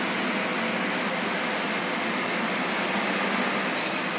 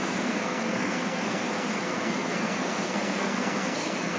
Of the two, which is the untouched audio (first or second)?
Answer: first